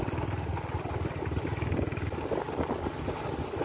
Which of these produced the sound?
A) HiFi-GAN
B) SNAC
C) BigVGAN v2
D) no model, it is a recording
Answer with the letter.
D